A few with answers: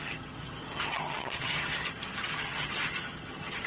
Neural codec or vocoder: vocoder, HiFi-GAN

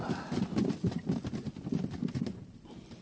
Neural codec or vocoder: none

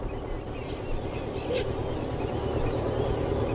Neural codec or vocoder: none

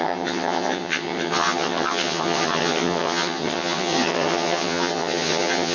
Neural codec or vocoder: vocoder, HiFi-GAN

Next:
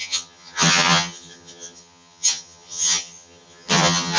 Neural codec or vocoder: vocoder, HiFi-GAN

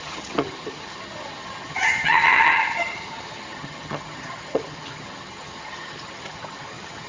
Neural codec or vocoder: vocoder, HiFi-GAN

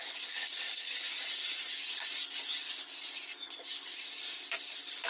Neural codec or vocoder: none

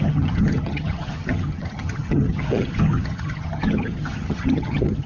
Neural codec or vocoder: vocoder, HiFi-GAN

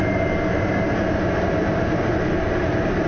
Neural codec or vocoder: none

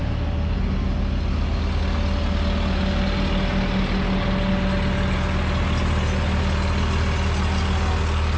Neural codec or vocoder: none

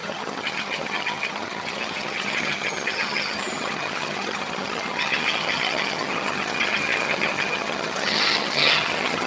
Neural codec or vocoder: vocoder, HiFi-GAN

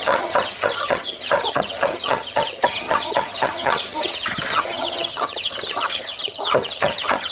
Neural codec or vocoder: vocoder, HiFi-GAN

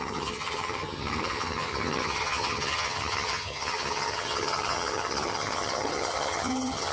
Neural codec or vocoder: vocoder, HiFi-GAN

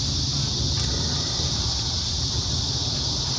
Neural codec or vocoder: none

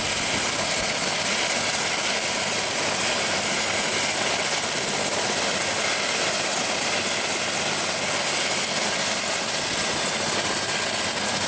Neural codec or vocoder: none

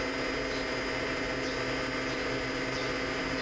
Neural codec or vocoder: none